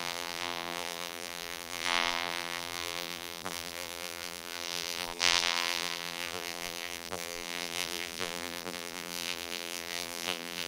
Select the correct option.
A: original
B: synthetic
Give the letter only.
B